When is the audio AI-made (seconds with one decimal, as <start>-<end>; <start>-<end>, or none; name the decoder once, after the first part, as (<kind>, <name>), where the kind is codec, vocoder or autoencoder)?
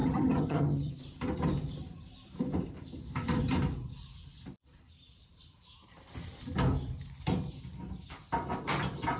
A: 0.0-0.9 (vocoder, HiFi-GAN)